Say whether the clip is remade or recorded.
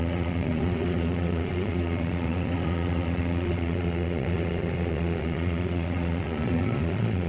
remade